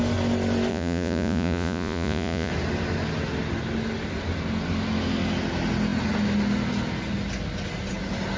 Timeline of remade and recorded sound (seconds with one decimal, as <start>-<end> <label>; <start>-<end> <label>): 0.0-0.7 recorded; 0.7-2.5 remade; 2.5-8.4 recorded